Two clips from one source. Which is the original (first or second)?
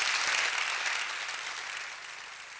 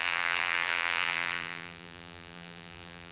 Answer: first